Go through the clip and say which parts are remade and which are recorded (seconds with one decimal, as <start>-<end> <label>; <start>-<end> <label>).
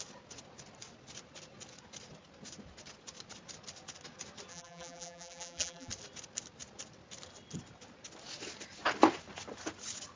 0.0-4.5 recorded; 4.5-5.9 remade; 5.9-10.2 recorded